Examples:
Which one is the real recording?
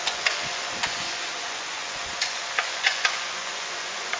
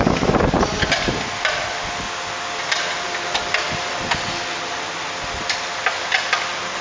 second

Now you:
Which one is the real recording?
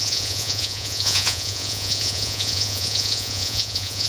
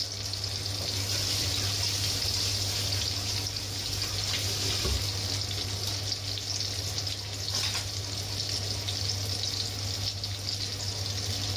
second